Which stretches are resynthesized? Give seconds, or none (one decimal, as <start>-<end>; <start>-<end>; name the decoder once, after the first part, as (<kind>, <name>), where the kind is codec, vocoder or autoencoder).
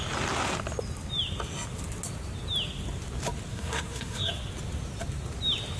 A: 3.5-4.3 (codec, SNAC)